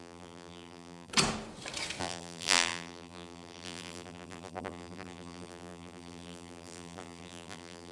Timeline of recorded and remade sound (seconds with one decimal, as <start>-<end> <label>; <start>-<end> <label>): 0.0-1.1 remade; 1.1-2.0 recorded; 2.0-7.9 remade